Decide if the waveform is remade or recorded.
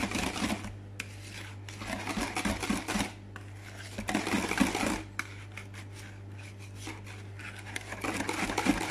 recorded